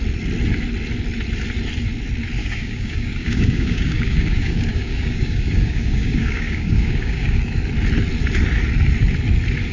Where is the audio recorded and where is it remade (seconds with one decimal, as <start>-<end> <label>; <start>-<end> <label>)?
0.0-2.4 recorded; 2.4-7.4 remade; 7.4-9.7 recorded